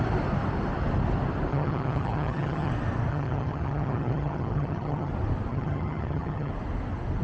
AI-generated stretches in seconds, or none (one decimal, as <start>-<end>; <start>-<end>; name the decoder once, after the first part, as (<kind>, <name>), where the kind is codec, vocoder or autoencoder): 1.5-2.7 (vocoder, HiFi-GAN); 3.1-5.1; 5.5-6.5

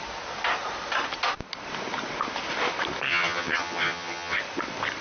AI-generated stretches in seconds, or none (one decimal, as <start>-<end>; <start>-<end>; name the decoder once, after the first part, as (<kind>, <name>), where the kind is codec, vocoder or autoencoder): 3.1-4.4 (vocoder, HiFi-GAN)

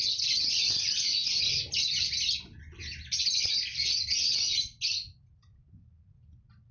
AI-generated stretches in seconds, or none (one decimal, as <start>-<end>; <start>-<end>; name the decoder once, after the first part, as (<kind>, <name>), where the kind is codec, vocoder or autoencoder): none

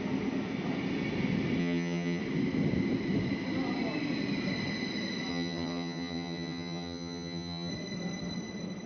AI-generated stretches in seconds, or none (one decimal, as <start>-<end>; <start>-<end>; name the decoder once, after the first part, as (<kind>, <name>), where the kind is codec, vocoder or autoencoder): 1.6-2.2 (vocoder, HiFi-GAN); 5.3-7.7

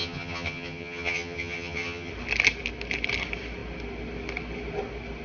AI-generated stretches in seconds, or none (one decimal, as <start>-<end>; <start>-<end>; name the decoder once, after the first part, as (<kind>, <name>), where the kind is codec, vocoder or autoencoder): 0.0-2.1 (vocoder, HiFi-GAN)

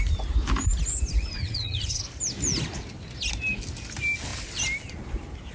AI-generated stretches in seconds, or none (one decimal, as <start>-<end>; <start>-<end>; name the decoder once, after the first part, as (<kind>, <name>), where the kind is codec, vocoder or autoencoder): 1.4-2.0 (vocoder, HiFi-GAN)

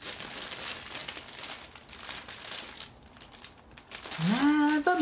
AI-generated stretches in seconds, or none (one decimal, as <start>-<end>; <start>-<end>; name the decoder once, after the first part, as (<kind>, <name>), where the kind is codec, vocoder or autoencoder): none

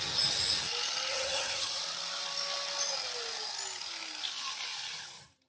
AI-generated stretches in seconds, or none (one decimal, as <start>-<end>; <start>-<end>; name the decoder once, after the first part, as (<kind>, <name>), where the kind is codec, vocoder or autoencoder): 1.1-1.8 (vocoder, HiFi-GAN)